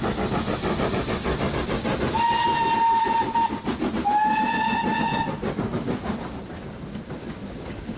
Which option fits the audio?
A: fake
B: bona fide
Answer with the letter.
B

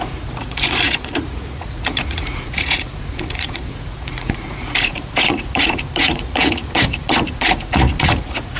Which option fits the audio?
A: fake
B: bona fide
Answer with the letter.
A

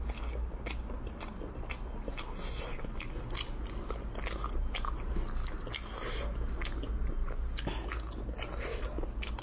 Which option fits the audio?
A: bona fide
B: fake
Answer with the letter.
A